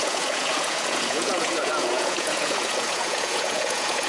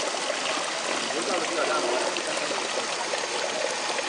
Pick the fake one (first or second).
first